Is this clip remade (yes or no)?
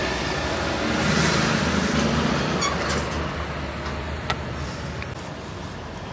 no